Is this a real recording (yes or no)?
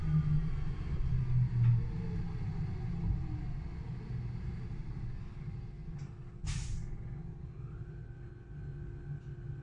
yes